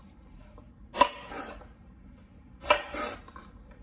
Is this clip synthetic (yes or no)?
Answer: yes